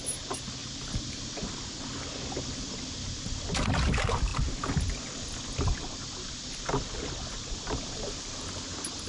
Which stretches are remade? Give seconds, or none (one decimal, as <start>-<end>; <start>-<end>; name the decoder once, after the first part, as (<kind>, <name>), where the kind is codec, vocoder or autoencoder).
none